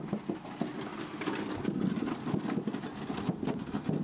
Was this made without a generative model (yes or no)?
yes